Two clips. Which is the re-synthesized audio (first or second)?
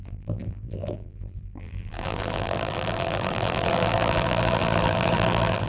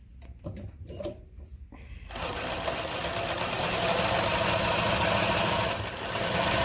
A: first